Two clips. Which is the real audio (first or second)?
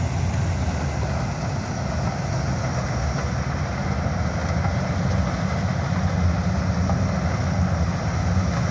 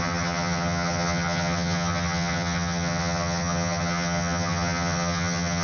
first